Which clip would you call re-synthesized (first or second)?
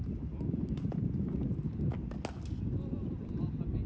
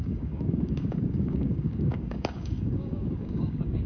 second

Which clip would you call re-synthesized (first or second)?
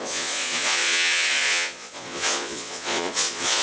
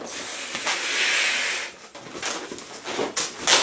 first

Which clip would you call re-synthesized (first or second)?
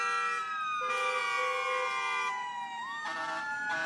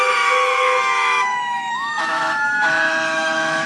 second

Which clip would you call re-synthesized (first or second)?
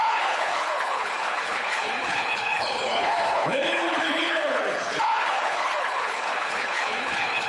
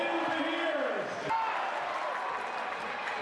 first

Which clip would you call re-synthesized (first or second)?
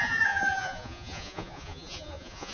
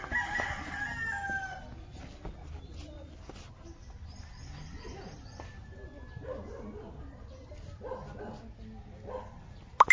first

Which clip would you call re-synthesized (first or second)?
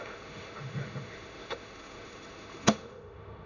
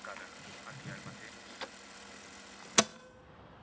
first